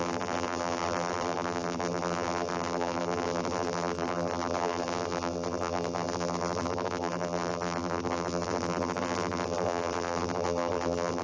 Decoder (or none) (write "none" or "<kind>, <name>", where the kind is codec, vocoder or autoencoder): vocoder, BigVGAN v2